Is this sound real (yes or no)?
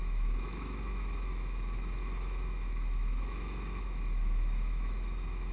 no